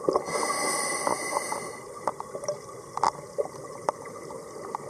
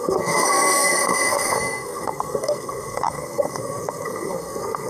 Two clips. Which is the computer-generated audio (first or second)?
second